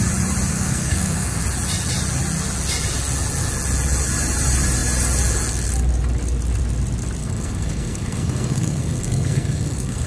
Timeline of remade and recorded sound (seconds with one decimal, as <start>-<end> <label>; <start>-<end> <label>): 0.0-0.5 recorded; 0.5-1.4 remade; 1.4-7.2 recorded; 7.2-10.1 remade